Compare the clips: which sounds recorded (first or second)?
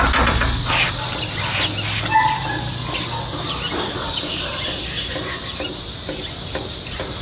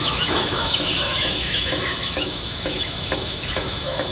first